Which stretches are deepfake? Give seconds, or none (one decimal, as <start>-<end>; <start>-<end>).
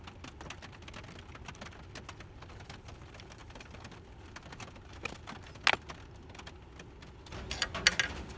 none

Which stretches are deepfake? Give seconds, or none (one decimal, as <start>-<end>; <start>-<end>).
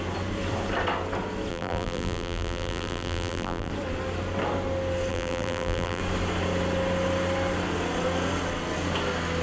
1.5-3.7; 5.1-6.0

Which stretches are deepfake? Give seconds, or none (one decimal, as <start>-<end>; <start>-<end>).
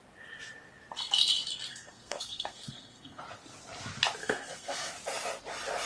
1.7-3.2; 4.2-4.9